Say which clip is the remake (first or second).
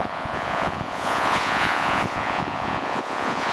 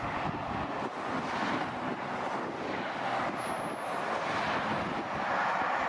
first